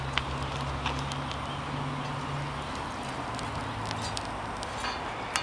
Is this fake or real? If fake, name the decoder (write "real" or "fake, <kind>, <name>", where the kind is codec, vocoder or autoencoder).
real